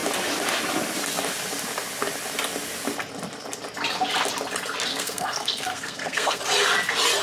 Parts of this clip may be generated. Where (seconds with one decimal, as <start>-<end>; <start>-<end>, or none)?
4.9-6.4